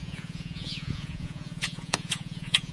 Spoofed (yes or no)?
yes